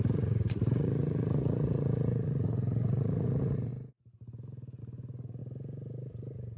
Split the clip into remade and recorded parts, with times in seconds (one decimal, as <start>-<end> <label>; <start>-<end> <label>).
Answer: 0.0-3.7 remade; 3.7-4.8 recorded; 4.8-5.4 remade; 5.4-6.6 recorded